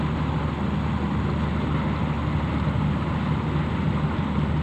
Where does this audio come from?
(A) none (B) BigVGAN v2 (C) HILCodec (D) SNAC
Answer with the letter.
A